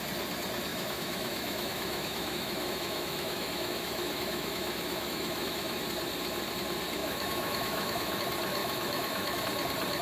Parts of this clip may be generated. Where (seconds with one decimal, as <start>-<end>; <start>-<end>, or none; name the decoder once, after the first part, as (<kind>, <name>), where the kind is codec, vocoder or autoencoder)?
0.7-5.8 (autoencoder, DAC-VAE); 7.0-8.2; 8.6-9.4

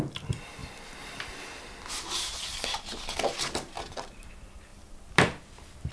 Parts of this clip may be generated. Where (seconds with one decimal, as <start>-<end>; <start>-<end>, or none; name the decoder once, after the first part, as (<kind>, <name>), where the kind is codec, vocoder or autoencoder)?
none

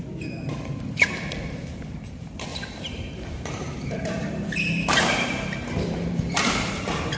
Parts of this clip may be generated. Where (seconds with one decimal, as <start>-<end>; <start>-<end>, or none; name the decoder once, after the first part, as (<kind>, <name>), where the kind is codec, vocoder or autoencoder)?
2.5-6.8 (vocoder, BigVGAN v2)

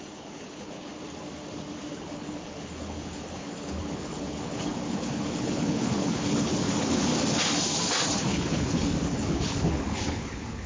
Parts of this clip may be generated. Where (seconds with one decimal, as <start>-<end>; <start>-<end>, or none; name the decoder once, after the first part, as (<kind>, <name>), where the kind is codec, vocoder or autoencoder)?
0.0-0.9 (codec, HILCodec); 1.9-7.1; 8.2-10.7

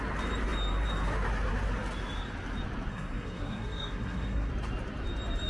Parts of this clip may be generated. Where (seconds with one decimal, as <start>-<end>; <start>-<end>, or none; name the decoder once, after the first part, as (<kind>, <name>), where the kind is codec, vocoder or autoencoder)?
2.9-4.5 (codec, SNAC)

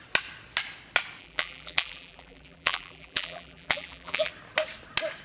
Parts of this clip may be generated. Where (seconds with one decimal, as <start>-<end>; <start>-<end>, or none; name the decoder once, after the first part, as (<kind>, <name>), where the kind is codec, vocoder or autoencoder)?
1.2-4.3 (vocoder, BigVGAN v2)